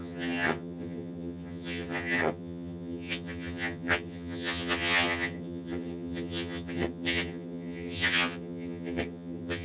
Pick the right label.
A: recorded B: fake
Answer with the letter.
B